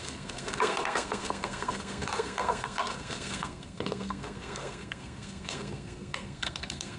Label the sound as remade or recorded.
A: remade